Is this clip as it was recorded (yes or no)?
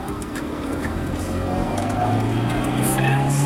no